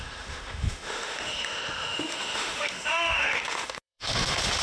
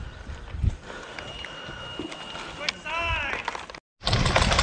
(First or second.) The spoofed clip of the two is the first